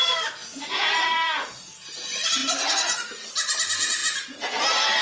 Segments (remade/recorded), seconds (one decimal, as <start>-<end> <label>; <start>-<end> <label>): 0.0-0.4 recorded; 0.4-1.5 remade; 1.5-4.0 recorded; 4.0-4.6 remade; 4.6-5.0 recorded